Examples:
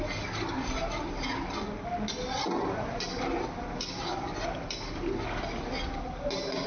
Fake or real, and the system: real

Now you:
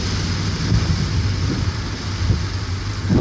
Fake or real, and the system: real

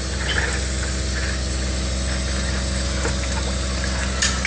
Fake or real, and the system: real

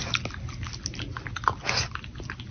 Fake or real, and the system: real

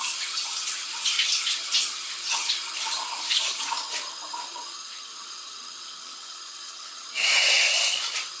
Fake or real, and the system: fake, vocoder, HiFi-GAN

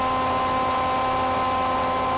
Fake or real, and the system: real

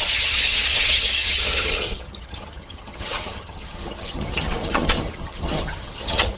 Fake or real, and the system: fake, vocoder, HiFi-GAN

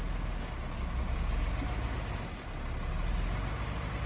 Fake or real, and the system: real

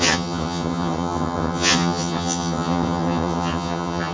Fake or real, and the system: fake, vocoder, HiFi-GAN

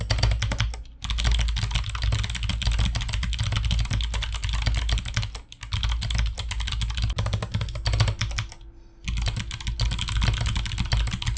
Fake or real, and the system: real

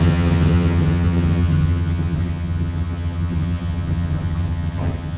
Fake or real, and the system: fake, vocoder, HiFi-GAN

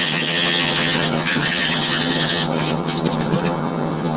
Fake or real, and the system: fake, vocoder, HiFi-GAN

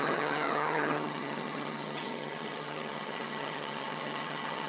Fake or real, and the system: fake, vocoder, HiFi-GAN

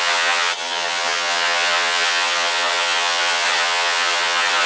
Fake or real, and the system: fake, vocoder, HiFi-GAN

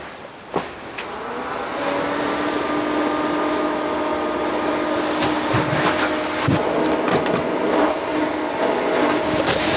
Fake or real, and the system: real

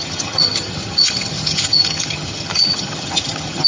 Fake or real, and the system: fake, vocoder, HiFi-GAN